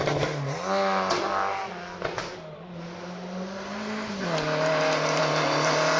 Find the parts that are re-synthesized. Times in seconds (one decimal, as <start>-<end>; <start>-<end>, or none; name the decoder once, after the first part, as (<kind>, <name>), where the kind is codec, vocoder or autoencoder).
none